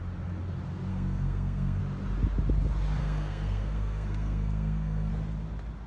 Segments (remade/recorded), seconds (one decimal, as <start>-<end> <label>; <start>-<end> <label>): 0.0-0.9 recorded; 0.9-1.8 remade; 1.8-3.0 recorded; 3.0-5.1 remade; 5.1-5.9 recorded